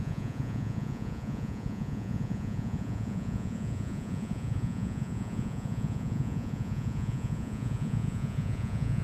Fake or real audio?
fake